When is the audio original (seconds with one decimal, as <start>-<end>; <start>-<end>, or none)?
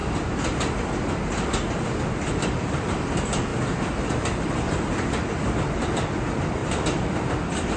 0.0-2.0